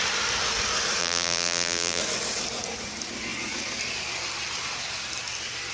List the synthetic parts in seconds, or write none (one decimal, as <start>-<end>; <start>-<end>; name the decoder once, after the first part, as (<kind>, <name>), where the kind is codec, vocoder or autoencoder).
1.0-2.0 (vocoder, BigVGAN v2)